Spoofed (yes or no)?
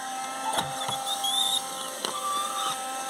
no